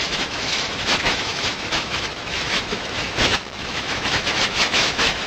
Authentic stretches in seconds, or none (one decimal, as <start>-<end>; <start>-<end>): none